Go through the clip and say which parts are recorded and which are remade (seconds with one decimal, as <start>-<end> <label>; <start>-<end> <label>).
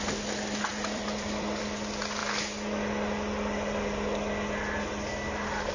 0.0-0.7 recorded; 0.7-1.6 remade; 1.6-5.7 recorded